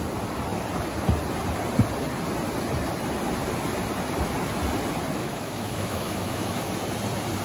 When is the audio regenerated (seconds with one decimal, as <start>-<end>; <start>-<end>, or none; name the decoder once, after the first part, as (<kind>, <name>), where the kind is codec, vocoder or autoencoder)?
5.2-6.7 (autoencoder, DAC-VAE)